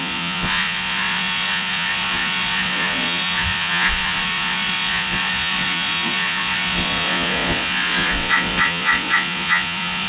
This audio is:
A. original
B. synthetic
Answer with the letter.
B